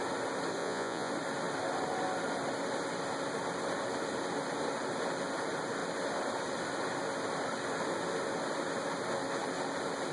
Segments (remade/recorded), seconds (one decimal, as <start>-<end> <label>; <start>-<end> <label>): 0.0-0.6 recorded; 0.6-1.1 remade; 1.1-10.1 recorded